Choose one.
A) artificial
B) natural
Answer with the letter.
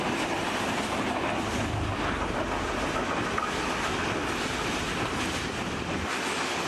B